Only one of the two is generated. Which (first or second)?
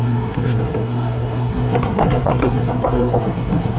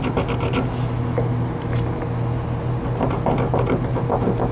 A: first